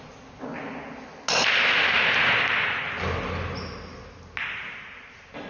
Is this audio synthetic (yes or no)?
no